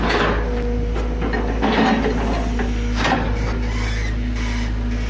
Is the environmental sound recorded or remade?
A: recorded